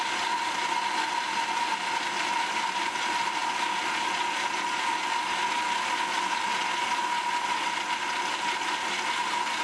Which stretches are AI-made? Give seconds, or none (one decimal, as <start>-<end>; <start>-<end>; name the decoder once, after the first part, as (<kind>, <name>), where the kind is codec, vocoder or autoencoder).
none